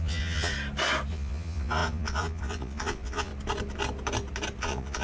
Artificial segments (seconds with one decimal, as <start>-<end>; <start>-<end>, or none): 0.0-0.5; 1.1-3.3; 4.6-5.0